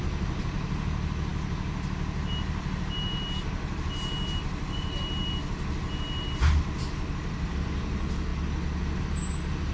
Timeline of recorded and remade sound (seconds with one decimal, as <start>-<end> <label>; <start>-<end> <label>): 0.0-9.7 recorded